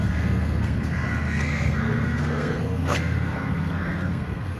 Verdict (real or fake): fake